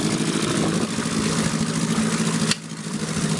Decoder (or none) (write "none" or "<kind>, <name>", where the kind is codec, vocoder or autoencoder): none